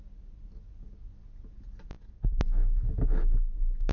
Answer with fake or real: real